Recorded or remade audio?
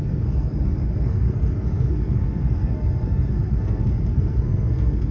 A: remade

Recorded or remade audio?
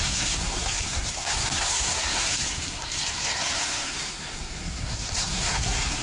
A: remade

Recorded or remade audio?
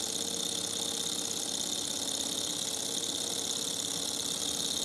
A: recorded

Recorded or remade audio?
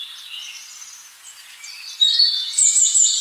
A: recorded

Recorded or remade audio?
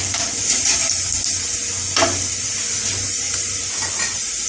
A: recorded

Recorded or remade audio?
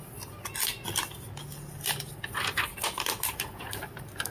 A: recorded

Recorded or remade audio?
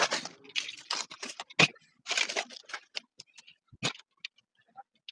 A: recorded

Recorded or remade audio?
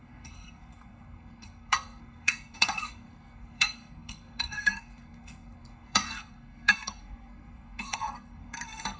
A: remade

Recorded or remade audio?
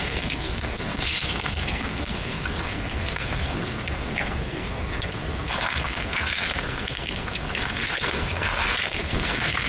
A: remade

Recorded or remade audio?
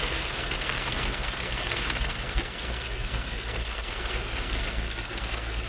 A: remade